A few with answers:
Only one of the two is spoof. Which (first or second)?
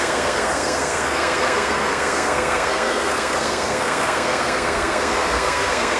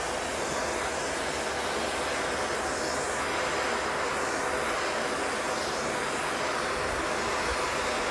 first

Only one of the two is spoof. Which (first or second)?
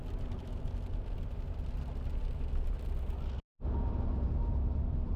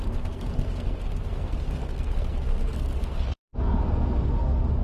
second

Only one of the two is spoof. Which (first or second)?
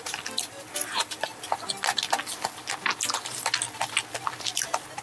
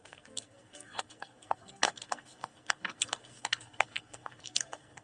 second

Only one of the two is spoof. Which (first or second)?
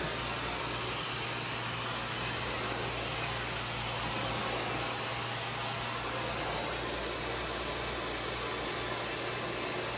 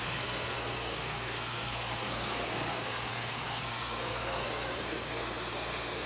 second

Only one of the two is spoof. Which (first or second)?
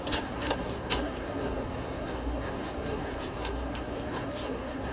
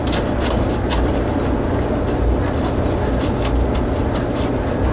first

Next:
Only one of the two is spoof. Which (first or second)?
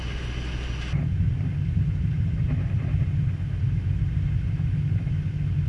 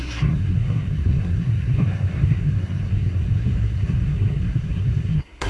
second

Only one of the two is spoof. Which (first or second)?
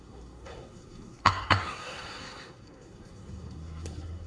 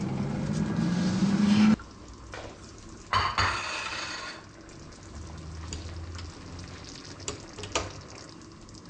first